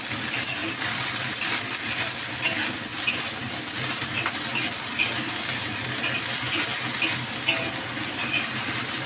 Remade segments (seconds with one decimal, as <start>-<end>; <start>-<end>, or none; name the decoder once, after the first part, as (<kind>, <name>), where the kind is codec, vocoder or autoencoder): none